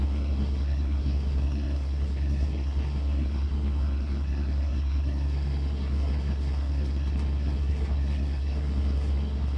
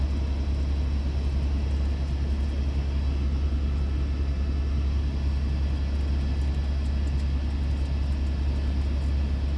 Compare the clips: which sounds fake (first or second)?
first